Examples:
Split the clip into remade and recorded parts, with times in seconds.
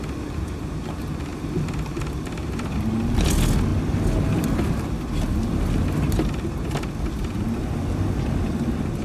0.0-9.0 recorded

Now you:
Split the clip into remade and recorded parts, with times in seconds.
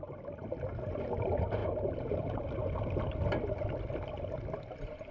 0.0-1.6 recorded; 1.6-2.4 remade; 2.4-5.1 recorded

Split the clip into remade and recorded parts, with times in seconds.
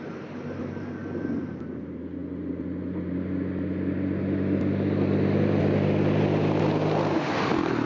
0.0-7.9 recorded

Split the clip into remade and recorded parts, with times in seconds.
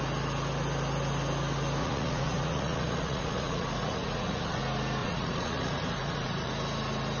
0.0-1.8 recorded; 1.8-4.6 remade; 4.6-5.0 recorded; 5.0-6.5 remade; 6.5-7.2 recorded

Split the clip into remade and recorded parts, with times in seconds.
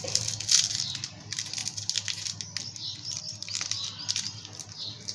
0.0-5.1 recorded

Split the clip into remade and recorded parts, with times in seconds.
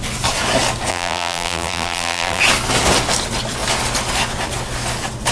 0.0-0.9 recorded; 0.9-2.4 remade; 2.4-5.3 recorded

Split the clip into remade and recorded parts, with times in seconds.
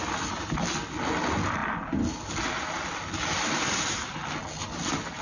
0.0-5.2 recorded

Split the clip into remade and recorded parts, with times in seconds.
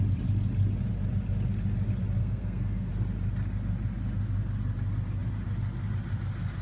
0.0-2.2 recorded; 2.2-2.9 remade; 2.9-6.6 recorded